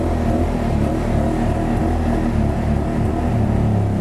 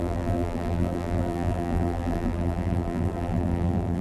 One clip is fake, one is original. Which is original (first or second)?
first